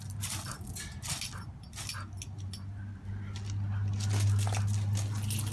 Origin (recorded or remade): recorded